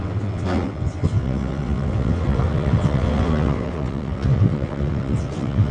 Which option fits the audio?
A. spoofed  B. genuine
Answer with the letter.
A